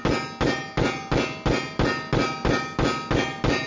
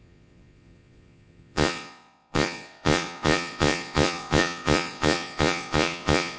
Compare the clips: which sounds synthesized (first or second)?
second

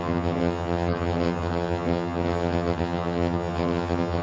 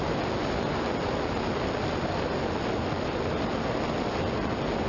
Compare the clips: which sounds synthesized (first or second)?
first